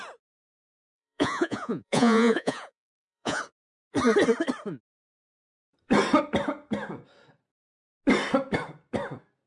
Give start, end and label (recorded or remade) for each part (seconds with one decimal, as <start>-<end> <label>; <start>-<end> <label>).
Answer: 0.0-0.4 recorded; 0.4-3.4 remade; 3.4-9.5 recorded